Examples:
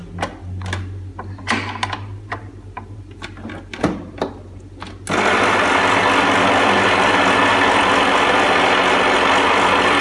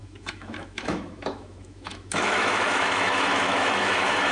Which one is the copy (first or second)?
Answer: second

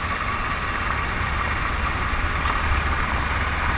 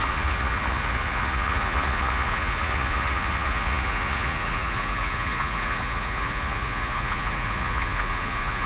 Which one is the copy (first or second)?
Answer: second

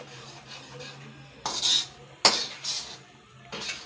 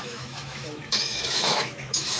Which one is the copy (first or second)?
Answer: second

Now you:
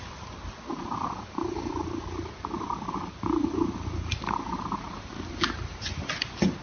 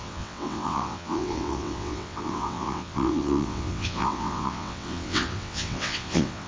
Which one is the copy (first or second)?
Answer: second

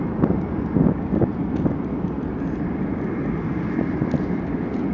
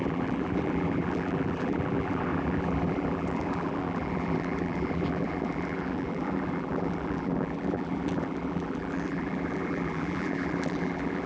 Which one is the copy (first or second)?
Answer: second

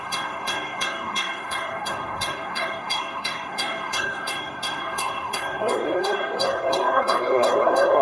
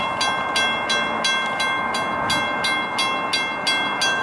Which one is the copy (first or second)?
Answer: first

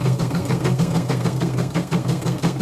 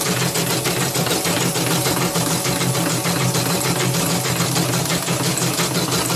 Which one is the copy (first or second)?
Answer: first